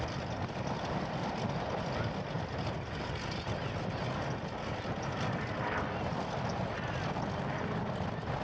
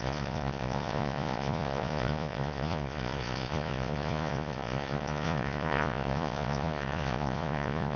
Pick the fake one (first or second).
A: second